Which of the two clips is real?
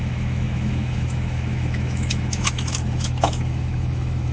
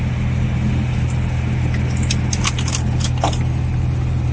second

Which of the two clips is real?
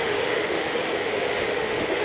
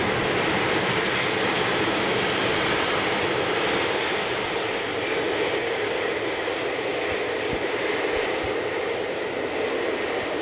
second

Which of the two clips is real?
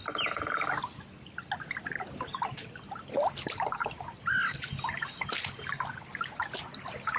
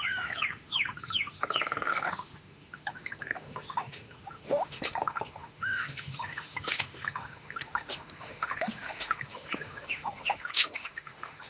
first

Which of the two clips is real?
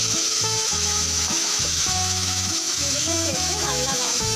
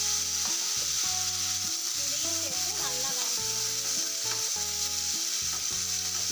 second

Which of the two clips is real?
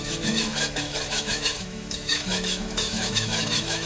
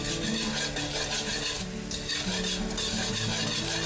second